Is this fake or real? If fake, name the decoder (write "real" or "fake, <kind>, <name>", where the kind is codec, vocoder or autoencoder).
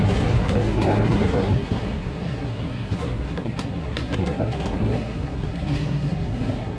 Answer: fake, codec, SNAC